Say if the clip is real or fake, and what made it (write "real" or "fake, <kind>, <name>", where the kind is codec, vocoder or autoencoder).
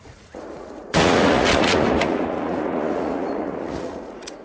fake, vocoder, Vocos